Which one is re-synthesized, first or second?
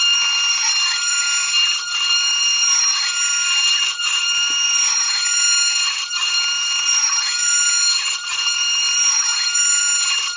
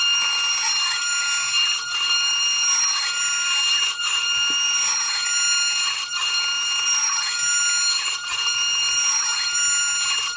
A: first